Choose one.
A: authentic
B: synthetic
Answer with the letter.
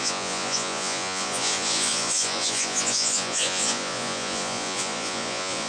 B